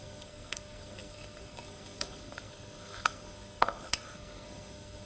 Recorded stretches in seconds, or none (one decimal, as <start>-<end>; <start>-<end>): none